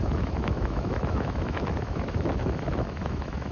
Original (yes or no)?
no